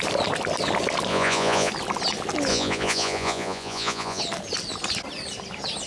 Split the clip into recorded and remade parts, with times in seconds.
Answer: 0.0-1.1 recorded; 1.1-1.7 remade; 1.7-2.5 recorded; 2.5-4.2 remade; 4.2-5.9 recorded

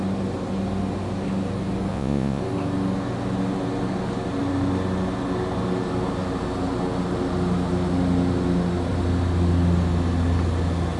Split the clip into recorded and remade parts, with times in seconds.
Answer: 0.0-1.9 recorded; 1.9-2.4 remade; 2.4-11.0 recorded

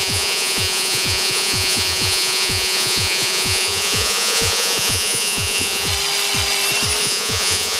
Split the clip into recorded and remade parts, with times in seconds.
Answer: 0.0-5.9 remade; 5.9-7.0 recorded; 7.0-7.8 remade

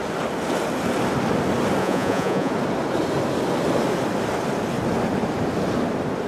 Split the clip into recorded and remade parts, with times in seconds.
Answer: 0.0-1.8 recorded; 1.8-2.5 remade; 2.5-6.3 recorded

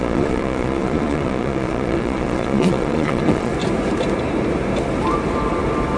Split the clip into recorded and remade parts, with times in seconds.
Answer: 0.0-3.5 remade; 3.5-6.0 recorded

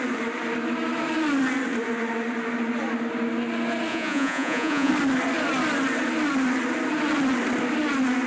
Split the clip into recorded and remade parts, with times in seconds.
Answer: 0.0-3.9 recorded; 3.9-4.9 remade; 4.9-8.3 recorded

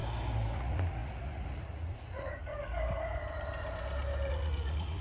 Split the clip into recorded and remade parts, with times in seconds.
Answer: 0.0-0.5 recorded; 0.5-2.5 remade; 2.5-4.3 recorded; 4.3-5.0 remade

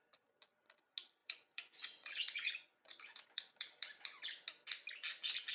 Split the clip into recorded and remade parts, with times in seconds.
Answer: 0.0-1.2 recorded; 1.2-4.2 remade; 4.2-5.5 recorded